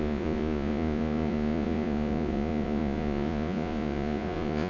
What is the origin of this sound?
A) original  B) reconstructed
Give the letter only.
B